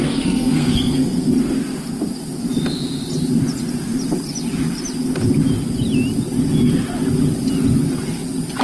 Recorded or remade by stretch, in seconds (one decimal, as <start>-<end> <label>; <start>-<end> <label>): 0.0-1.3 remade; 1.3-8.6 recorded